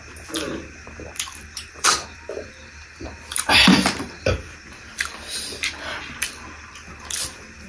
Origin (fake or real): fake